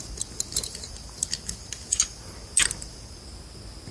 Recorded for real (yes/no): yes